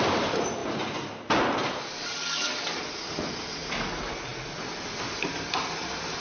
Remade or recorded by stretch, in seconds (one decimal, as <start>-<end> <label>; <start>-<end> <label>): 0.0-6.2 recorded